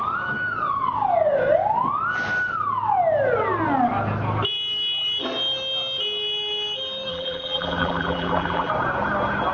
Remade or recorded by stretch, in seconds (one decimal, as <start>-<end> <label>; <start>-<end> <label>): 0.0-7.1 recorded; 7.1-8.7 remade; 8.7-9.5 recorded